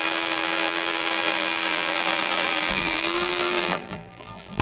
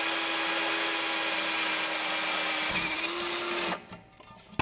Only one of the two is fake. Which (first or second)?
first